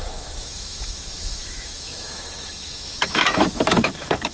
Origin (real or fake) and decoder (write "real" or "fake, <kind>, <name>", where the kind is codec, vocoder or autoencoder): fake, autoencoder, DAC-VAE